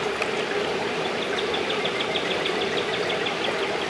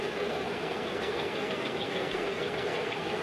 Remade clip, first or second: second